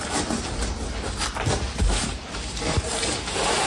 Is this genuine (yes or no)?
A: yes